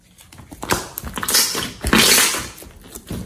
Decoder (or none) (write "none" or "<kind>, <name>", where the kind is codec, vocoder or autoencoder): none